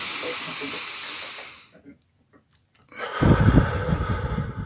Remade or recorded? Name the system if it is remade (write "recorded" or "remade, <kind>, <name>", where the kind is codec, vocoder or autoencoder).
recorded